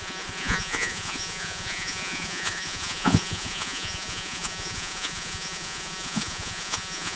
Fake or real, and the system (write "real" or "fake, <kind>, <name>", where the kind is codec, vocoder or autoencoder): fake, vocoder, Vocos